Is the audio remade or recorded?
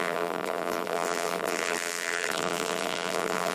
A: remade